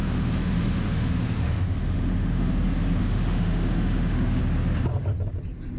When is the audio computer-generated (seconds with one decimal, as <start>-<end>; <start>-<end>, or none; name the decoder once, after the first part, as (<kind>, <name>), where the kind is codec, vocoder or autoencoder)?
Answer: 0.0-2.5 (autoencoder, DAC-VAE); 3.0-4.4